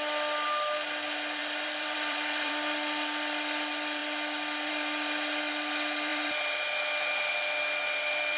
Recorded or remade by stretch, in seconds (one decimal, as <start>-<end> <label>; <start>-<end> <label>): 0.0-1.4 recorded; 1.4-2.5 remade; 2.5-6.1 recorded; 6.1-7.3 remade; 7.3-8.4 recorded